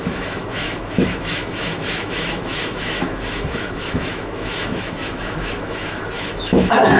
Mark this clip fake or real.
fake